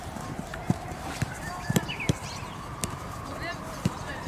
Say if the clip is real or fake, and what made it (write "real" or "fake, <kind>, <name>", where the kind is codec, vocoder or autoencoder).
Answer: fake, vocoder, BigVGAN v2